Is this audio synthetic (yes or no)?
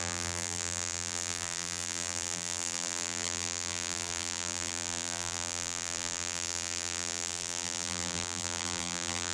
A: yes